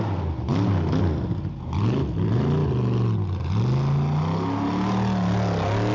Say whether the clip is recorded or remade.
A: recorded